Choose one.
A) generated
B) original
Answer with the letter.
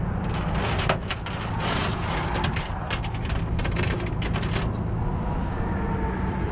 B